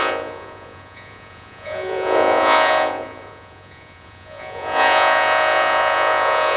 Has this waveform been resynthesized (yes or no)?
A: yes